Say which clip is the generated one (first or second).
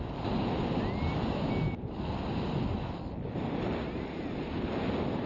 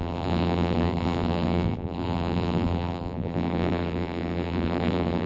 second